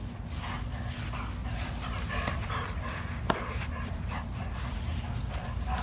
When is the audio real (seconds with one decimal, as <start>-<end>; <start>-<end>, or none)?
0.0-1.4; 4.9-5.8